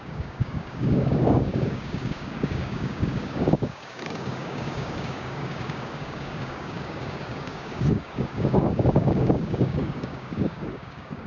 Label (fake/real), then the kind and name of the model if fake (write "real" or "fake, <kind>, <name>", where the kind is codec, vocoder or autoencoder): fake, codec, DAC